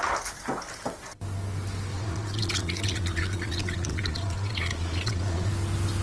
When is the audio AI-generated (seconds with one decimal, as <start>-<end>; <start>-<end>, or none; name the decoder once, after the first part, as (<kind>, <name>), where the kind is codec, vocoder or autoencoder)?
1.9-5.5 (vocoder, Vocos)